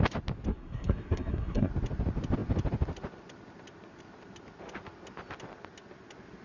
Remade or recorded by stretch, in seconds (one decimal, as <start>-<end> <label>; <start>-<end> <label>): 0.0-0.5 recorded; 0.5-1.7 remade; 1.7-6.4 recorded